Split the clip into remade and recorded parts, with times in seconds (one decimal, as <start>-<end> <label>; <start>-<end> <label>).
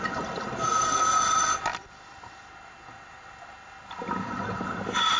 0.0-5.2 recorded